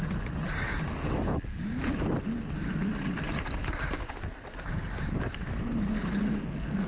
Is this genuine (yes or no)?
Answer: yes